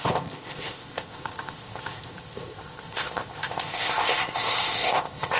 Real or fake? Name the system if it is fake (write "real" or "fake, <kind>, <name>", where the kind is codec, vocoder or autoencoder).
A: fake, codec, ZipCodec